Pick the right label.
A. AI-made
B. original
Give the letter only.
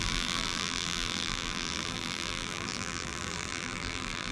A